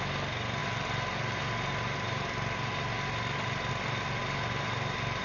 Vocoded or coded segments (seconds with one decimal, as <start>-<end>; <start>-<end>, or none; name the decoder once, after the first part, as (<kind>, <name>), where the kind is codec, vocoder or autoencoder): none